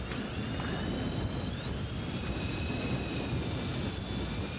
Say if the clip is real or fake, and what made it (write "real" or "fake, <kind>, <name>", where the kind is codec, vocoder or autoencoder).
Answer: real